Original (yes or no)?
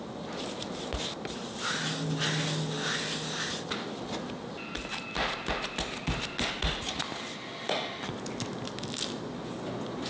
yes